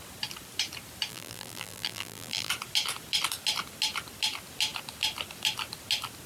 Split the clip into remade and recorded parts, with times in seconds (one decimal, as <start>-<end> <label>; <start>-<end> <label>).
0.0-1.1 recorded; 1.1-2.5 remade; 2.5-6.3 recorded